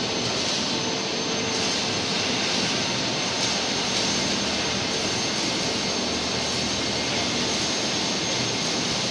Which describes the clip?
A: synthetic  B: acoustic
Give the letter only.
B